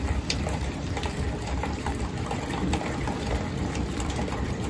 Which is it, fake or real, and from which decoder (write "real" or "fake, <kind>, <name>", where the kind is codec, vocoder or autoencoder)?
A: fake, vocoder, BigVGAN v2